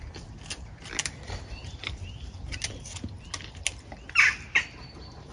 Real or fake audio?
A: real